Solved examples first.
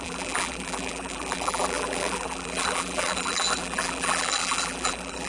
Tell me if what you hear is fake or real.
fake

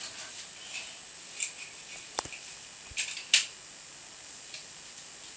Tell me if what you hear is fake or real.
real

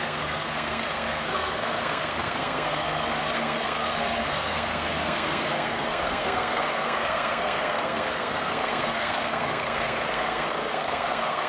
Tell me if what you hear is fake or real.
fake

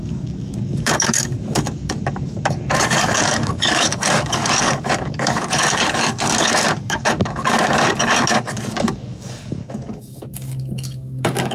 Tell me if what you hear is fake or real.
fake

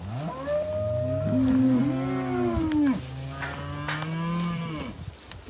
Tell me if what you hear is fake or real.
real